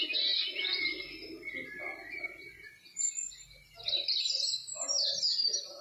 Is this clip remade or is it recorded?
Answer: recorded